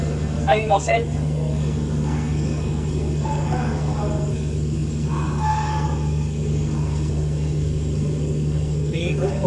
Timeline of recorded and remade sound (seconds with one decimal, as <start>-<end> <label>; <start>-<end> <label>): 0.0-9.5 remade